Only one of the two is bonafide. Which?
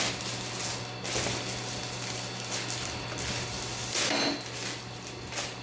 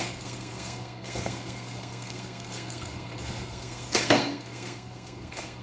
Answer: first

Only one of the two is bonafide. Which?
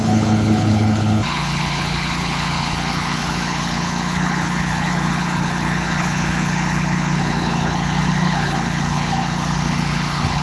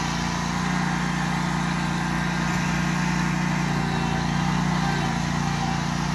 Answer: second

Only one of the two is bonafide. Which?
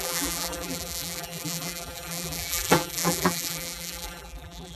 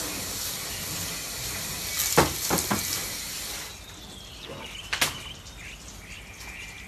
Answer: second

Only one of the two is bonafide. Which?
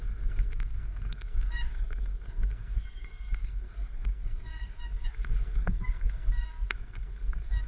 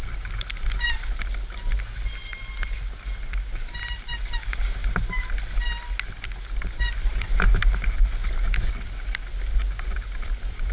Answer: second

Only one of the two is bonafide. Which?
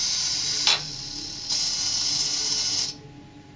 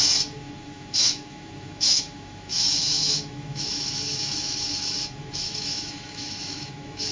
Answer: first